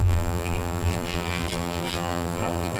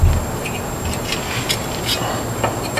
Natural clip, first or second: second